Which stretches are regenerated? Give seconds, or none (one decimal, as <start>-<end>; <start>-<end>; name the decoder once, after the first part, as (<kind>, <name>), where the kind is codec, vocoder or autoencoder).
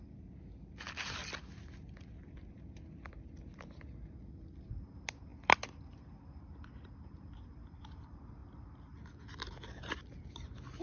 none